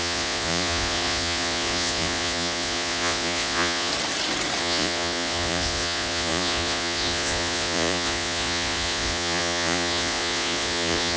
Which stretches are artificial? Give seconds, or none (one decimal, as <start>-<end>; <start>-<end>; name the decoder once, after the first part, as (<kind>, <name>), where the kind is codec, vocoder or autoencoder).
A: 0.0-3.9 (vocoder, Vocos); 4.6-11.2

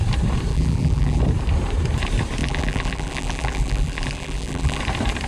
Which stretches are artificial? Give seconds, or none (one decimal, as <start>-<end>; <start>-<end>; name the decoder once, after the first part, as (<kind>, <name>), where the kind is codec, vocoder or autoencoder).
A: 0.5-1.2 (vocoder, BigVGAN v2); 2.4-4.8

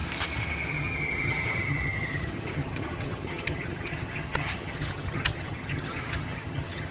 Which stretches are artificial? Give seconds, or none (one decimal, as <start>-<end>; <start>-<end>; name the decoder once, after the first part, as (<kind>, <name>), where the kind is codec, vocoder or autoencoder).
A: 0.7-6.9 (vocoder, HiFi-GAN)

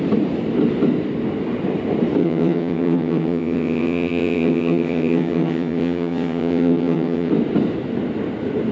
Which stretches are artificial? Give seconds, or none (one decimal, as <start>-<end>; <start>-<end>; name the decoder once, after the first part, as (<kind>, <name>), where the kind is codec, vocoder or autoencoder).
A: 2.2-7.3 (vocoder, HiFi-GAN)

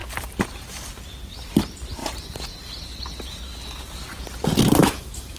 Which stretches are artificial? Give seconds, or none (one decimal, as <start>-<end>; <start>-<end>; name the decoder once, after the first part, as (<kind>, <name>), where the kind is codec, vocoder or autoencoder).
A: 4.8-5.4 (autoencoder, DAC-VAE)

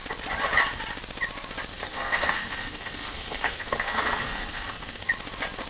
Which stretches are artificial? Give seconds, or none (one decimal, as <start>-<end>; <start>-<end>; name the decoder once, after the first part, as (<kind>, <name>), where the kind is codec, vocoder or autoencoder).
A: 1.7-5.1 (codec, SNAC)